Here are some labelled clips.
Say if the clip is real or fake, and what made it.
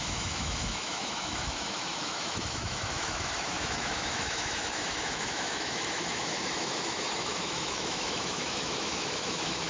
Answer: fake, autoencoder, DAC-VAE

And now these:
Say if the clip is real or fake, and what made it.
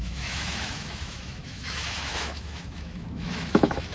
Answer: fake, autoencoder, DAC-VAE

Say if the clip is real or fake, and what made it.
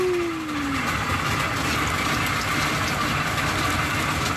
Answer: real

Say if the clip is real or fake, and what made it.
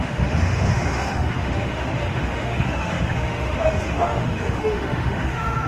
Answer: fake, autoencoder, DAC-VAE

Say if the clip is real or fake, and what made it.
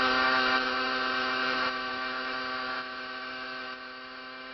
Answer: fake, autoencoder, DAC-VAE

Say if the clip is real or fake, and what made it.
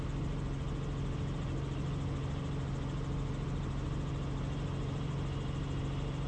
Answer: real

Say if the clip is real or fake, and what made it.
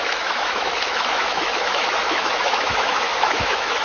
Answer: fake, autoencoder, DAC-VAE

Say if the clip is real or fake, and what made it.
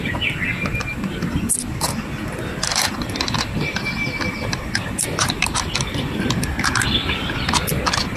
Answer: real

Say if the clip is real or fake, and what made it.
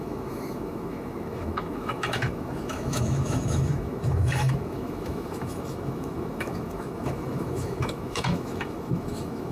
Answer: fake, autoencoder, DAC-VAE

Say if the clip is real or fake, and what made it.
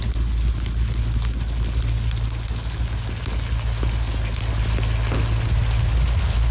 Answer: real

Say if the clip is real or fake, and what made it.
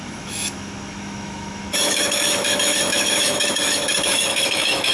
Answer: fake, autoencoder, DAC-VAE